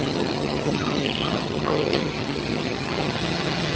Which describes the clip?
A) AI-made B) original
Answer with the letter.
A